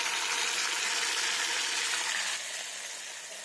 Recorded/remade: recorded